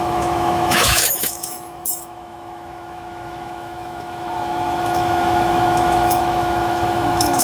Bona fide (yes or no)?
no